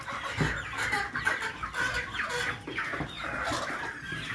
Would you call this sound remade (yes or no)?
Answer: yes